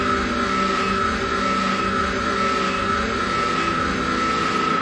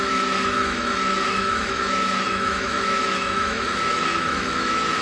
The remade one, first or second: second